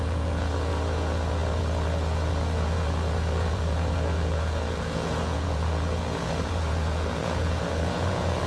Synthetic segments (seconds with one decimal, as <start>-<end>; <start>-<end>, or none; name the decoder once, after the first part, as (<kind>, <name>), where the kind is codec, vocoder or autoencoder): 0.0-8.5 (vocoder, Vocos)